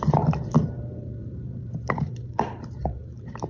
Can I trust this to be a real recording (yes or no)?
no